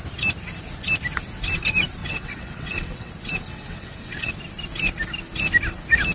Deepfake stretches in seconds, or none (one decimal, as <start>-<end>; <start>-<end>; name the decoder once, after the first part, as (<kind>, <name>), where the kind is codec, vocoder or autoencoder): 2.0-3.1 (vocoder, WaveNeXt); 3.5-4.3